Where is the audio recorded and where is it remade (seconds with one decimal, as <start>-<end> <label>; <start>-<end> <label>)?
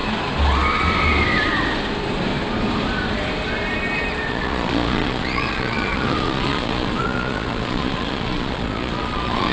0.0-4.3 recorded; 4.3-9.5 remade